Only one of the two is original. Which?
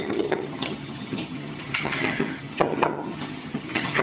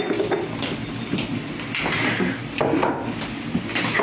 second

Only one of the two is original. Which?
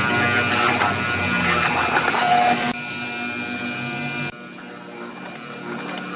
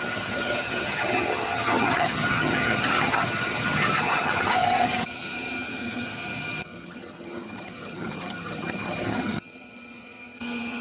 first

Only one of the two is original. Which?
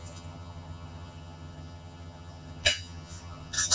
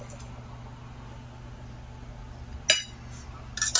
second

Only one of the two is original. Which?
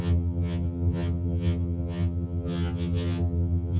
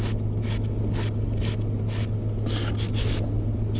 second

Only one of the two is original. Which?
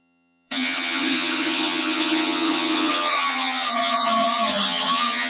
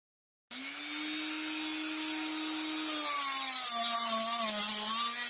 second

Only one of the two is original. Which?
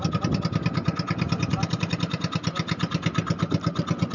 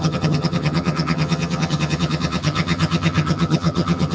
first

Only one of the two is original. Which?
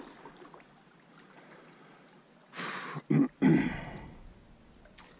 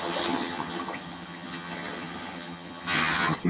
first